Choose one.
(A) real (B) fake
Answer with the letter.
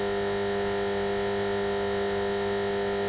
A